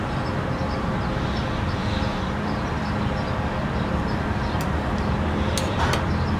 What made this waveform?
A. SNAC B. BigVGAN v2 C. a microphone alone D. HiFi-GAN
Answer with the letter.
C